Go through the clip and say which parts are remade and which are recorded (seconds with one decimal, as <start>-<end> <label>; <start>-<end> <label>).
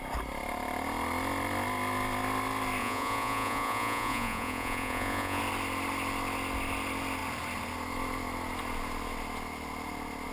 0.0-2.8 recorded; 2.8-5.4 remade; 5.4-10.3 recorded